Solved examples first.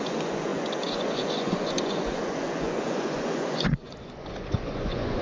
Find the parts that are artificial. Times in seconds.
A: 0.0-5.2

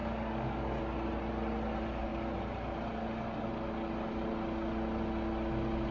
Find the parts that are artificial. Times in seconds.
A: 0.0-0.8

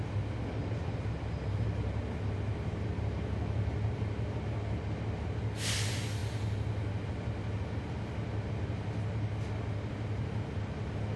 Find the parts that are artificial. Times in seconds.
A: none

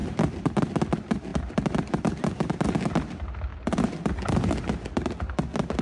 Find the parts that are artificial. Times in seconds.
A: 0.0-0.6; 1.3-2.5; 3.5-4.5

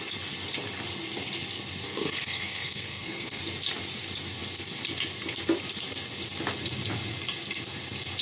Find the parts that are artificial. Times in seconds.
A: 1.9-3.4